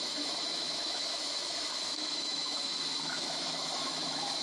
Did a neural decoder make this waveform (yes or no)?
yes